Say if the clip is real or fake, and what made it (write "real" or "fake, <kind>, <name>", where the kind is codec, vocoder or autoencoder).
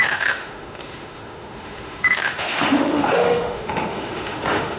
fake, autoencoder, DAC-VAE